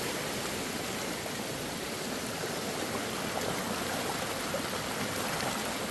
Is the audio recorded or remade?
recorded